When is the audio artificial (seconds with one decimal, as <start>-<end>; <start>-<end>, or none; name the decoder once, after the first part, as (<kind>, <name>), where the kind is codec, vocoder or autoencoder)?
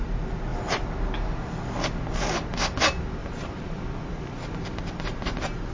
3.2-4.3 (vocoder, BigVGAN v2)